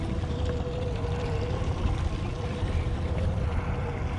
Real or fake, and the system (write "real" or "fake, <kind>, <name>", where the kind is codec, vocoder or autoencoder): real